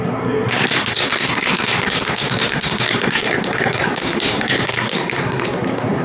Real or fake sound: fake